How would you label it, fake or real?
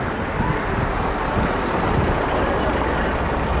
real